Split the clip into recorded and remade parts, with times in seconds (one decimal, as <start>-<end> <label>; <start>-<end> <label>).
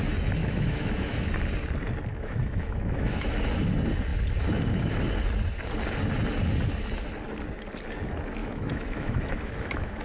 0.0-0.4 recorded; 0.4-1.3 remade; 1.3-2.1 recorded; 2.1-3.3 remade; 3.3-8.4 recorded; 8.4-10.0 remade